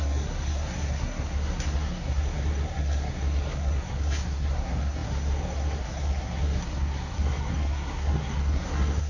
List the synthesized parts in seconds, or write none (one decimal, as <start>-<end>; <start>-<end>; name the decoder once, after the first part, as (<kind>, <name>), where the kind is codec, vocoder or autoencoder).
0.0-9.1 (codec, SNAC)